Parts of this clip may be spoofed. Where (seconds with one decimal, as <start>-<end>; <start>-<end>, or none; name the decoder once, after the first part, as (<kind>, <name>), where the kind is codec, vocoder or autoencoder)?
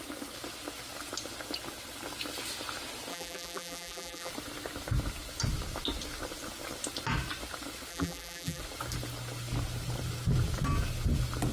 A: 3.1-4.3 (vocoder, BigVGAN v2); 7.9-8.6